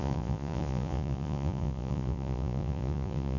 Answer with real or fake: fake